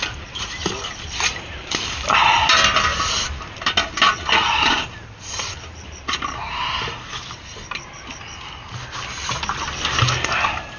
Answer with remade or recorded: recorded